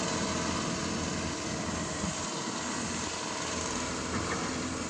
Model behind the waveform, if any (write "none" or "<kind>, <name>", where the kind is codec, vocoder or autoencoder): none